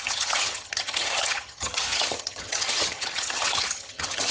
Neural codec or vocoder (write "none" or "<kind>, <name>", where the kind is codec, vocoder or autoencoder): vocoder, HiFi-GAN